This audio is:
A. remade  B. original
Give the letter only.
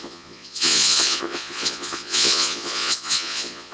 A